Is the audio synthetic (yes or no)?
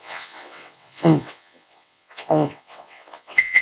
yes